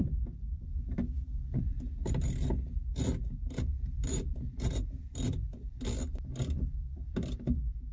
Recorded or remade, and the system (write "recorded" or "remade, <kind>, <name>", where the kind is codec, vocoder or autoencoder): recorded